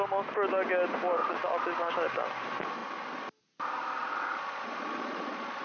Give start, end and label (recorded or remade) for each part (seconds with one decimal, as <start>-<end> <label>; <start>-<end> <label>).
0.0-1.2 recorded; 1.2-1.9 remade; 1.9-4.0 recorded; 4.0-5.6 remade